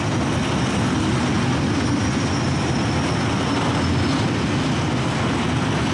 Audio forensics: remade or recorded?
recorded